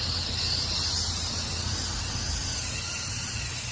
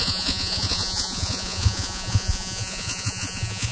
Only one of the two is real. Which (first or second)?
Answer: first